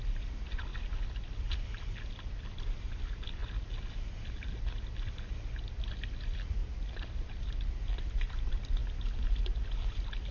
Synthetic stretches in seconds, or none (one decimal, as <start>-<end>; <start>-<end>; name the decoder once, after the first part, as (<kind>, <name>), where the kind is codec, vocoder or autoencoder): none